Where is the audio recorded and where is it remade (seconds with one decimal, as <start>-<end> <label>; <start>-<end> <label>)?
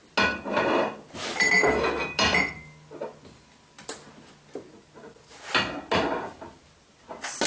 0.0-7.5 recorded